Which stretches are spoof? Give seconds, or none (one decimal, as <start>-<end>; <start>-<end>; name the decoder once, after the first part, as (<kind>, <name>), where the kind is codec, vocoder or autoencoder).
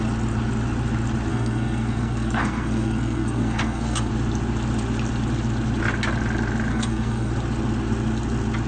1.3-4.1 (codec, SNAC); 6.7-7.3